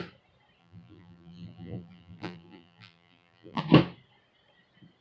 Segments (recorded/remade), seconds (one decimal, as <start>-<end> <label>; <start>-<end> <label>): 0.0-0.6 recorded; 0.6-3.6 remade; 3.6-5.0 recorded